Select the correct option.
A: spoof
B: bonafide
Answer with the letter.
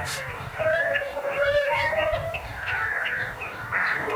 A